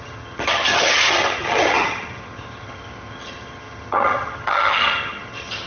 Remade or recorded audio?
remade